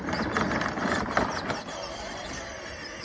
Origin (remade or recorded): recorded